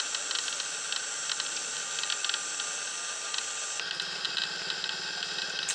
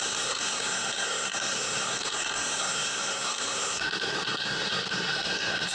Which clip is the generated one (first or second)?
second